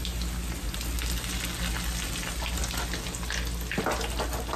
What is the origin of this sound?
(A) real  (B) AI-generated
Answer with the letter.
A